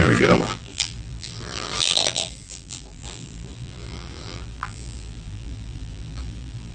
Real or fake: fake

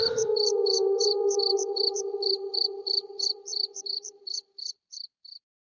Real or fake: fake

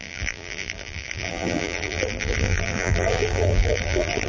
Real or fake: fake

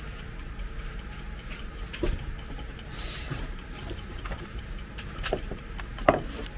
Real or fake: fake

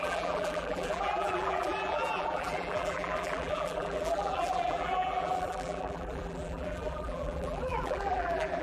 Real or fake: fake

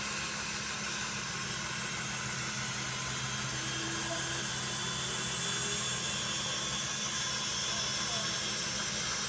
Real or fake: real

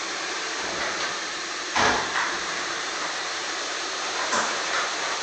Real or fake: fake